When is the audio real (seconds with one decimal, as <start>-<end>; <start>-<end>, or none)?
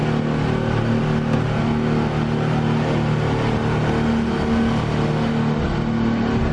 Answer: 0.0-6.5